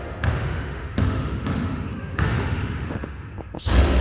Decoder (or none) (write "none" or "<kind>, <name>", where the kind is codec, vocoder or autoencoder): autoencoder, DAC-VAE